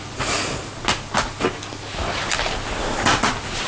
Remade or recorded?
recorded